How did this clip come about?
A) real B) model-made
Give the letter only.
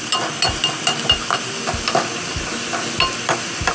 A